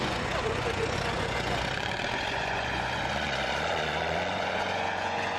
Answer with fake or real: fake